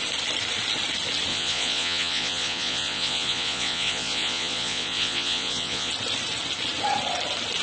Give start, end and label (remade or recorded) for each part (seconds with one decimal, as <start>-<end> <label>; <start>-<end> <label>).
0.0-1.3 recorded; 1.3-5.9 remade; 5.9-7.6 recorded